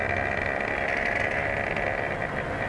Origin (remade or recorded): remade